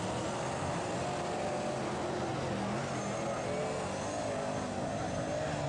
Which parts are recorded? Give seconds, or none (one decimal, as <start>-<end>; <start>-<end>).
0.0-5.7

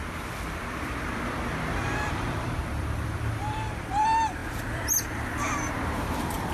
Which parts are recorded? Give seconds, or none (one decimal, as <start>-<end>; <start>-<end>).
none